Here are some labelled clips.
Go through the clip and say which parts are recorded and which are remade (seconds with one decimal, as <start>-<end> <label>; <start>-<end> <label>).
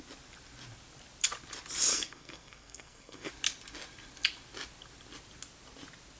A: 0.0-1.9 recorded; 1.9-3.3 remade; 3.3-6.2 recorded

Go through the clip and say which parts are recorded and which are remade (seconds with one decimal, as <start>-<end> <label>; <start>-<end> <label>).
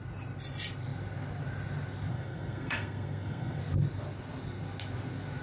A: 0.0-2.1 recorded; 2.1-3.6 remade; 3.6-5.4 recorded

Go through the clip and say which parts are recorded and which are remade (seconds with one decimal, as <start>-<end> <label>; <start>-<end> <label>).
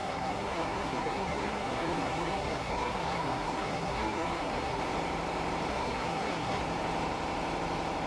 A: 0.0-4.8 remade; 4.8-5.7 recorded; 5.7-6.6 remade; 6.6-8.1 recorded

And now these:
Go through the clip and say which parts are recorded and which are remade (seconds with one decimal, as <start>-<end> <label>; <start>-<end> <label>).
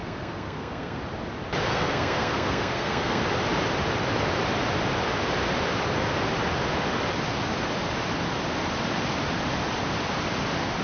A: 0.0-1.0 remade; 1.0-1.7 recorded; 1.7-3.2 remade; 3.2-10.8 recorded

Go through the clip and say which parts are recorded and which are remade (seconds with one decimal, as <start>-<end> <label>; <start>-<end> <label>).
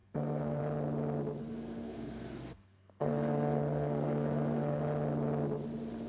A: 0.0-0.6 remade; 0.6-1.4 recorded; 1.4-4.8 remade; 4.8-6.1 recorded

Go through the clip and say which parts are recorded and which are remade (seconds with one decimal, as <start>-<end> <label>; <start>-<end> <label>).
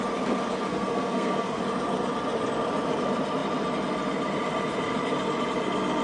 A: 0.0-0.7 recorded; 0.7-1.6 remade; 1.6-6.0 recorded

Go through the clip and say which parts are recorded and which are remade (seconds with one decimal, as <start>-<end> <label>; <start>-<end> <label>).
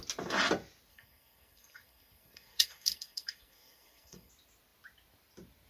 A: 0.0-0.9 recorded; 0.9-4.3 remade; 4.3-5.7 recorded